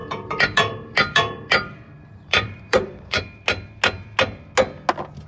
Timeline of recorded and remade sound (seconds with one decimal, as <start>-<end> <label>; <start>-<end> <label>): 0.0-3.2 remade; 3.2-5.3 recorded